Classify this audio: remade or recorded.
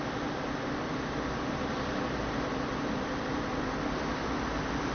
recorded